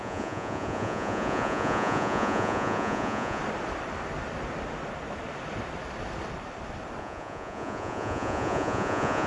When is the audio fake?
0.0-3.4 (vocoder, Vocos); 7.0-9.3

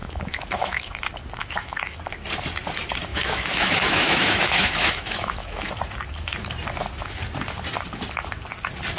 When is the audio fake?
0.0-0.9 (autoencoder, DAC-VAE); 1.4-2.0; 3.1-5.7

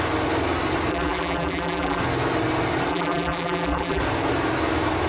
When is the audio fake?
0.9-2.0 (vocoder, BigVGAN v2); 2.9-4.0